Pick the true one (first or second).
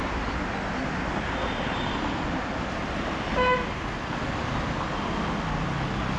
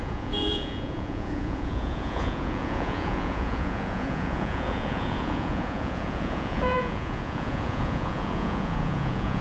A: first